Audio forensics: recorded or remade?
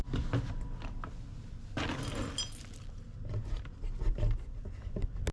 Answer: recorded